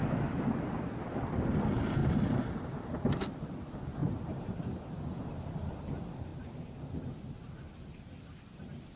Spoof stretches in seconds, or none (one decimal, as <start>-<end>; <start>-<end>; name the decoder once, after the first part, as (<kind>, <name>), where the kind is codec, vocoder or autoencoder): 2.0-3.0 (vocoder, BigVGAN v2); 4.0-4.6; 6.3-8.1